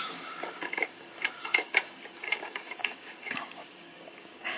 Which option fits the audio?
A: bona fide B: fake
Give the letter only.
B